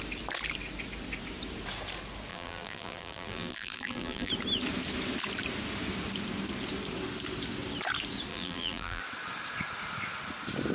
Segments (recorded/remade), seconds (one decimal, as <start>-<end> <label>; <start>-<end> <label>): 0.0-2.3 recorded; 2.3-4.3 remade; 4.3-8.3 recorded; 8.3-9.0 remade; 9.0-10.7 recorded